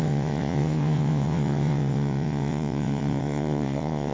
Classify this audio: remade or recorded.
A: remade